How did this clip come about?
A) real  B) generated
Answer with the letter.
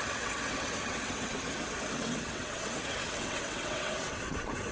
B